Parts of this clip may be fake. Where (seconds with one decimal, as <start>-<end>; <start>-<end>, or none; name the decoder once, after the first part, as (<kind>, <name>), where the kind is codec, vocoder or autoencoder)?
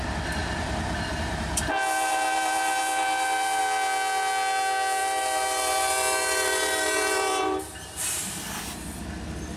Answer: 0.4-3.6 (vocoder, BigVGAN v2); 5.0-8.6